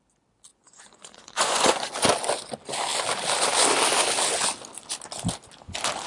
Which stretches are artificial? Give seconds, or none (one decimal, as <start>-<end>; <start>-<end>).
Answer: 0.5-1.9